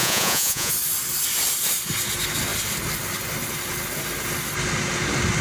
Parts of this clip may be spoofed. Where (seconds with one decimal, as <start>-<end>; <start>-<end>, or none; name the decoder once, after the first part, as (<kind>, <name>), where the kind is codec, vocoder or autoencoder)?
0.0-0.7 (vocoder, Vocos)